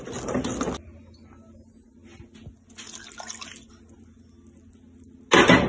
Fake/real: real